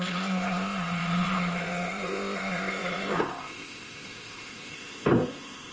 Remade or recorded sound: remade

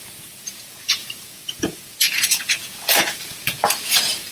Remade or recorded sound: remade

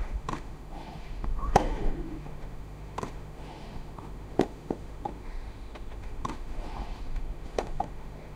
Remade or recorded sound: remade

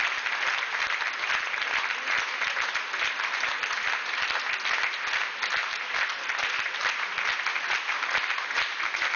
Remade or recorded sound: recorded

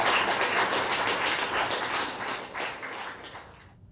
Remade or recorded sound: recorded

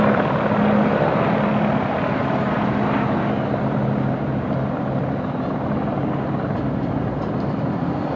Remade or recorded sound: recorded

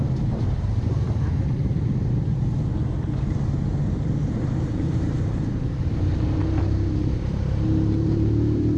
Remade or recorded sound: remade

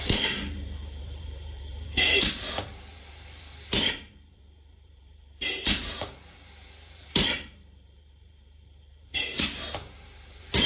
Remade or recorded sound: remade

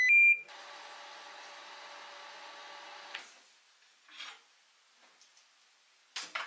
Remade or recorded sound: recorded